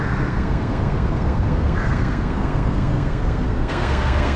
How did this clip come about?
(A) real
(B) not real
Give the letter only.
B